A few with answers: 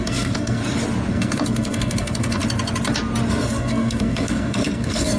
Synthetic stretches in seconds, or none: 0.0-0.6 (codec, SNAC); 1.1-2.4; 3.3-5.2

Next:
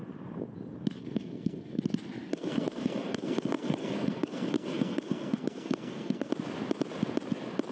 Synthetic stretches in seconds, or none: 1.0-1.8 (codec, SNAC); 2.3-6.3

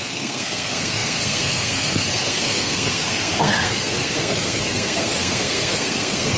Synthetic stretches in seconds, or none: 0.0-6.4 (codec, SNAC)

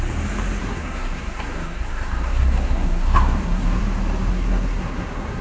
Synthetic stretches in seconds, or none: 0.6-3.8 (codec, SNAC); 4.3-5.4

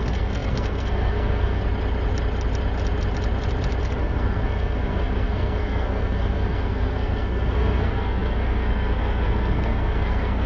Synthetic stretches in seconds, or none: 0.0-1.6 (codec, SNAC); 3.8-10.5

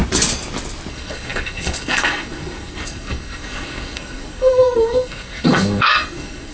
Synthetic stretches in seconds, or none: 0.9-6.5 (codec, SNAC)

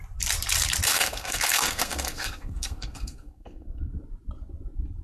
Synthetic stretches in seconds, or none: 0.9-3.9 (codec, SNAC)

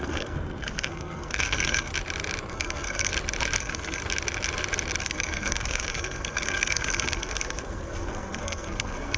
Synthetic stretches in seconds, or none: 0.0-1.9 (codec, SNAC); 2.5-3.1; 3.6-4.0; 5.0-9.2